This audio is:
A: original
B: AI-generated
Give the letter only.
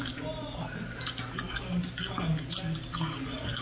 A